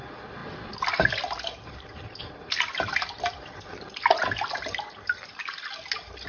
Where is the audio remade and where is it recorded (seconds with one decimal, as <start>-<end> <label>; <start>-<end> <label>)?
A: 0.0-6.3 recorded